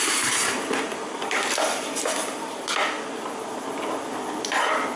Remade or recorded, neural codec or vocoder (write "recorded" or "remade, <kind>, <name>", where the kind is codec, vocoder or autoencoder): recorded